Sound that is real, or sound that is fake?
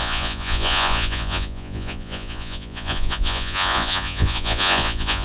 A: fake